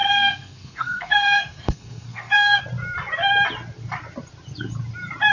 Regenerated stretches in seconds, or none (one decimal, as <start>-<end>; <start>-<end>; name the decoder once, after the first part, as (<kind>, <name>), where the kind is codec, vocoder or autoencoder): 0.0-2.6 (codec, SNAC)